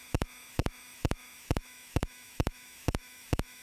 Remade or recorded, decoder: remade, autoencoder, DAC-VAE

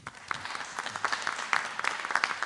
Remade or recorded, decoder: recorded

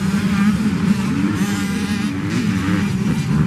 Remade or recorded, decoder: remade, vocoder, BigVGAN v2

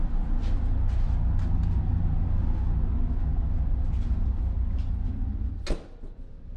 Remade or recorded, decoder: recorded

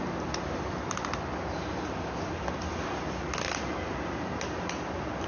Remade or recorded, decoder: recorded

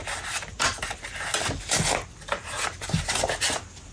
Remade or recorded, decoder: recorded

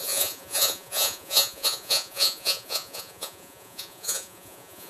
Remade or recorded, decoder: remade, vocoder, Vocos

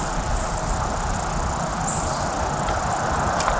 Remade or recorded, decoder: recorded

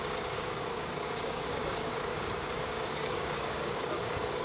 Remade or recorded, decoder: remade, codec, DAC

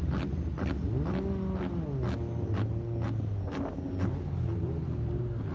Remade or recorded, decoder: recorded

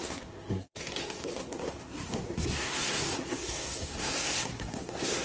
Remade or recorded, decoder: remade, codec, SNAC